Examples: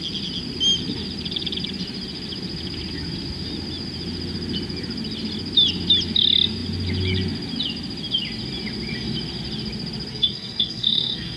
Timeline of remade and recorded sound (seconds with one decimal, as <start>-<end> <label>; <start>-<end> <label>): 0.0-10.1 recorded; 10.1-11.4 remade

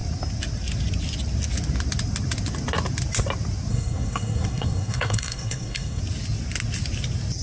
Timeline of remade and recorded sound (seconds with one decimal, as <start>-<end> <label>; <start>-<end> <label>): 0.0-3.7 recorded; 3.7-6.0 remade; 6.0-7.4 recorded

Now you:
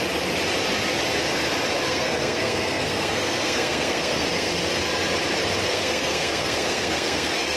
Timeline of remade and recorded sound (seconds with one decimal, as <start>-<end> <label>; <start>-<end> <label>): 0.0-1.9 recorded; 1.9-4.5 remade; 4.5-5.7 recorded; 5.7-7.6 remade

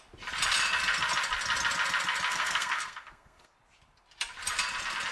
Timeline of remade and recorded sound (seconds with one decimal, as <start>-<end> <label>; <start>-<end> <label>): 0.0-2.3 recorded; 2.3-3.5 remade; 3.5-5.1 recorded

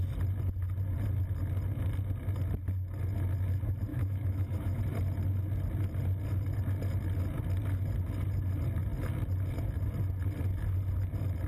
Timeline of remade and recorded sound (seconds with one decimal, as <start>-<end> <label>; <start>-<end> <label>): 0.0-3.9 recorded; 3.9-4.8 remade; 4.8-11.5 recorded

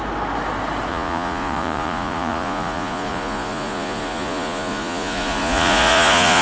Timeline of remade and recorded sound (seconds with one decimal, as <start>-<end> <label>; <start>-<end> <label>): 0.0-0.9 recorded; 0.9-6.4 remade

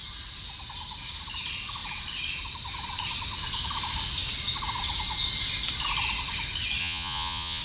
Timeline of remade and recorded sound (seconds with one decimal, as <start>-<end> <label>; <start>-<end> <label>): 0.0-6.8 recorded; 6.8-7.6 remade

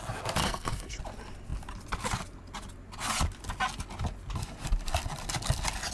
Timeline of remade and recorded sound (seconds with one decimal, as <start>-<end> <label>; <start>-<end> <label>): 0.0-0.4 recorded; 0.4-1.0 remade; 1.0-5.9 recorded